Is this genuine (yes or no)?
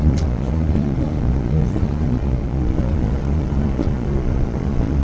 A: no